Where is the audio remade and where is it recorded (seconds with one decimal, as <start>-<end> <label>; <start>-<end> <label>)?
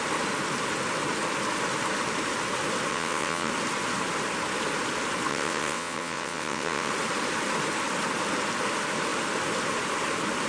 0.0-2.9 recorded; 2.9-3.5 remade; 3.5-5.3 recorded; 5.3-6.9 remade; 6.9-10.5 recorded